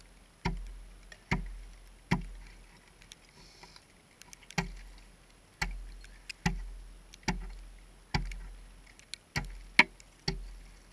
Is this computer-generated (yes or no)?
no